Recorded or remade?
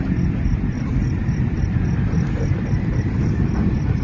remade